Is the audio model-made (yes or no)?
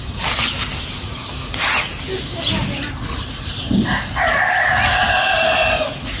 no